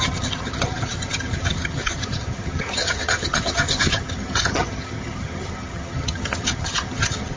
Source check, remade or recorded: remade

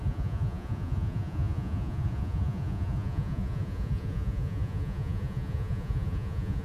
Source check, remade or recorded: remade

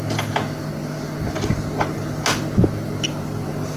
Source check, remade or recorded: recorded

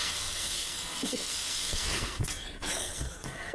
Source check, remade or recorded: remade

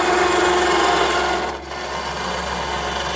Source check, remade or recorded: recorded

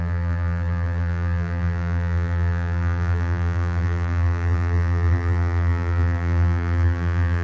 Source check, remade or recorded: remade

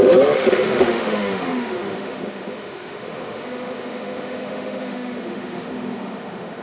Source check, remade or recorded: remade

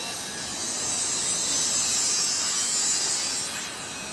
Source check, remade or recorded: recorded